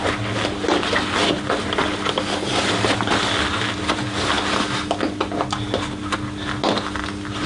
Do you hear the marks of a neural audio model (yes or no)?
no